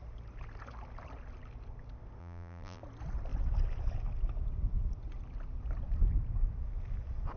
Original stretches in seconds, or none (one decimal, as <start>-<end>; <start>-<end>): 0.0-2.2; 2.8-7.4